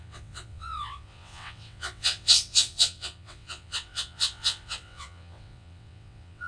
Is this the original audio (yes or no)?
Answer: no